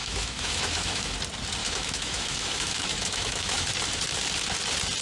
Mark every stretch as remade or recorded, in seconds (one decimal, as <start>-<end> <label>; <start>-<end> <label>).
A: 0.0-1.1 remade; 1.1-1.6 recorded; 1.6-3.7 remade; 3.7-5.0 recorded